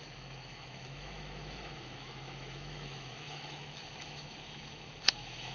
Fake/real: fake